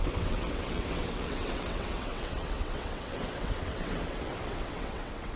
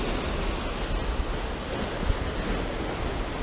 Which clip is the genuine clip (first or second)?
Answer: second